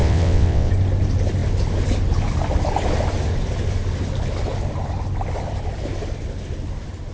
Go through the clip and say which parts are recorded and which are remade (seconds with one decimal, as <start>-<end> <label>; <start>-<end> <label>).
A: 0.0-0.7 remade; 0.7-7.1 recorded